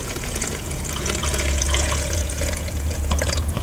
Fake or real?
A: fake